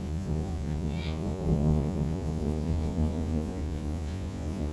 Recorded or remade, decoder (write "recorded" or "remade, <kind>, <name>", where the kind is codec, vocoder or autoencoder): remade, vocoder, Vocos